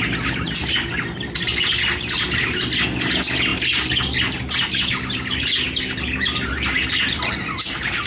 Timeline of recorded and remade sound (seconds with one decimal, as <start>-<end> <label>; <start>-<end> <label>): 0.0-8.1 recorded